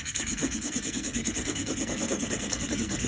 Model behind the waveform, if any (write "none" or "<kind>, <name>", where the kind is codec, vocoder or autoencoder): codec, SNAC